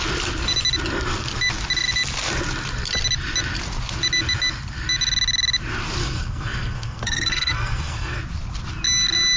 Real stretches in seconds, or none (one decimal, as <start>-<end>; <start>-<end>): 0.0-6.0; 8.2-9.4